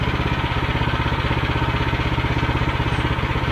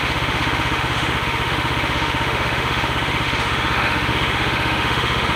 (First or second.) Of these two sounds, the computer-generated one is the second